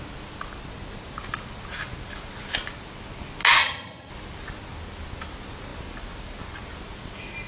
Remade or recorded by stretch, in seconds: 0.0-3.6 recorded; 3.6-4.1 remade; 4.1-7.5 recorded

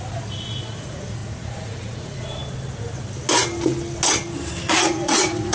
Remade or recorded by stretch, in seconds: 0.0-2.4 remade; 2.4-4.7 recorded; 4.7-5.5 remade

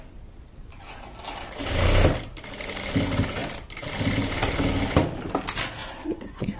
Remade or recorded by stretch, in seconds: 0.0-5.8 recorded; 5.8-6.6 remade